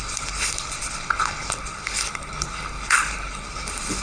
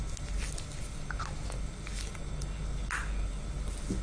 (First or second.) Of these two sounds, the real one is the second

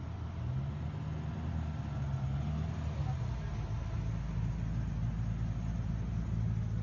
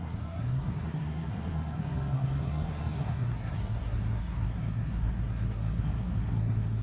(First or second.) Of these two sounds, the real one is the first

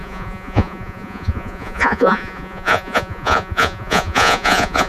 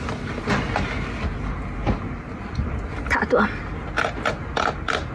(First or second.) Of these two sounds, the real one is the second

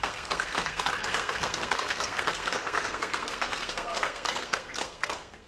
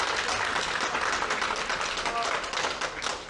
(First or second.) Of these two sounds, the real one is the second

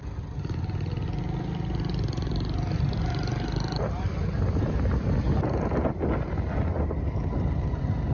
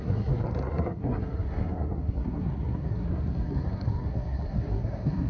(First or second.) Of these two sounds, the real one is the first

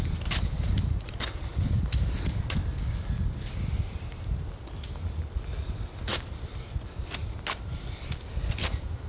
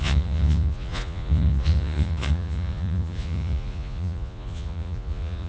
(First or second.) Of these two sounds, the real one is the first